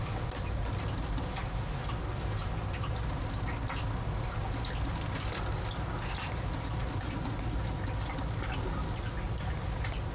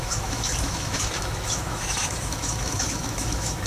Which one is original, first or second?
first